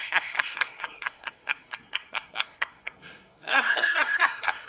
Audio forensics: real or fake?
fake